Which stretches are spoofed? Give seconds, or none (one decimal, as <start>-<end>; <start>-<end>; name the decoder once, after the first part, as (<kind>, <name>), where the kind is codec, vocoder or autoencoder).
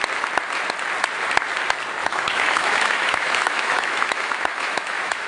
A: 2.0-5.3 (autoencoder, DAC-VAE)